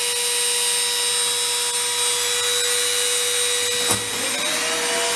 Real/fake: real